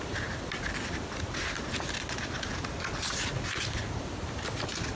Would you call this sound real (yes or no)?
yes